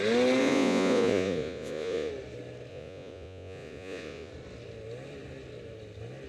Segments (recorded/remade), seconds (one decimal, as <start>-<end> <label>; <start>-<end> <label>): 0.0-0.4 recorded; 0.4-2.1 remade; 2.1-2.7 recorded; 2.7-4.3 remade; 4.3-6.3 recorded